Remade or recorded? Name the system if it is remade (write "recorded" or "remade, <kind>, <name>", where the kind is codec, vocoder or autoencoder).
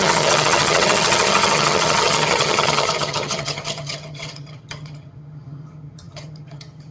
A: remade, vocoder, HiFi-GAN